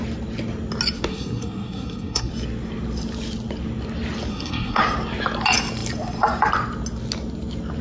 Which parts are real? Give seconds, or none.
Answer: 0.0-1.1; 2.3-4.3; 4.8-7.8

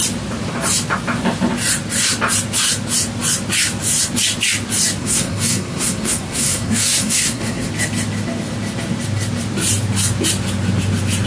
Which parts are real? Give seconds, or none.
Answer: 0.0-5.0; 7.7-11.3

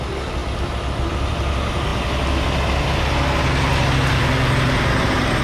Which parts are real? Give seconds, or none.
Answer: 0.0-5.4

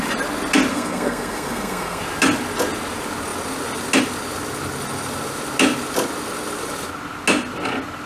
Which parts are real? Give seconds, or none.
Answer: 0.0-0.7; 2.0-8.1

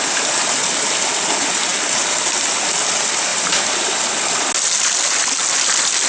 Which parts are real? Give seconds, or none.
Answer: 0.0-6.1

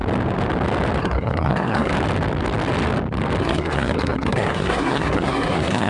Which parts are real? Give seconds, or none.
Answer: 0.0-1.0; 1.9-3.4